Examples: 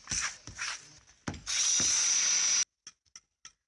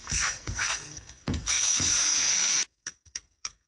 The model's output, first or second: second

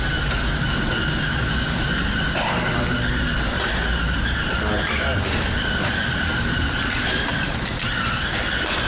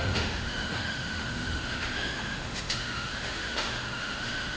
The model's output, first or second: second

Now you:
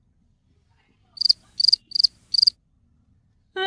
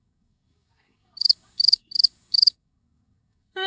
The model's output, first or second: second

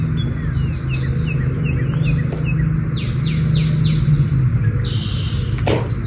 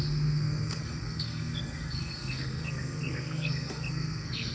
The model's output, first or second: second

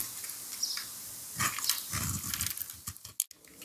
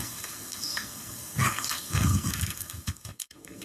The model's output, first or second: second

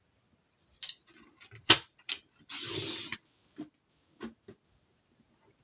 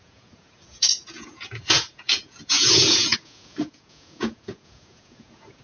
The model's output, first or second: second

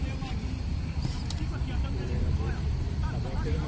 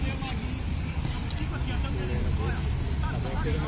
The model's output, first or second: first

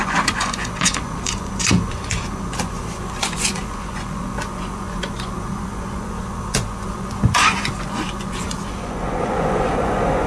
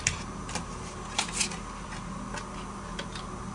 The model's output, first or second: first